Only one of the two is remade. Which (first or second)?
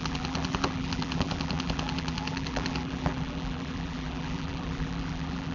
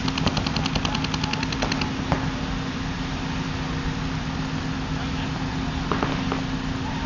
first